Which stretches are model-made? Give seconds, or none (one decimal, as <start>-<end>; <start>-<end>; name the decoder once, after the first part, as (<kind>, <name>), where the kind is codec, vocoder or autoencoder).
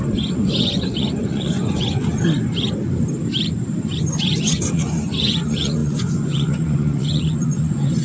0.0-2.0 (vocoder, Vocos); 4.2-8.0